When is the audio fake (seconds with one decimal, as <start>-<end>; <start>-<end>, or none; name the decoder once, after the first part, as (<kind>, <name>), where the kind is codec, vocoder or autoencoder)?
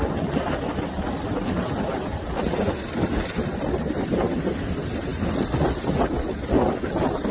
none